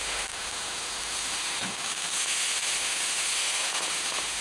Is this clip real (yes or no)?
no